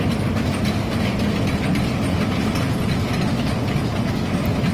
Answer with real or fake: real